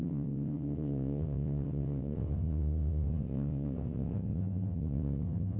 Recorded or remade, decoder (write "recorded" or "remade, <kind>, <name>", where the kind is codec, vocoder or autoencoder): remade, vocoder, WaveNeXt